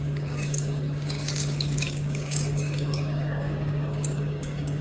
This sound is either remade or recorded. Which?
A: remade